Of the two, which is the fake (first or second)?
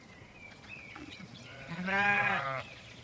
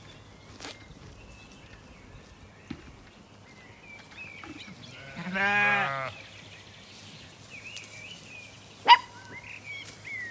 first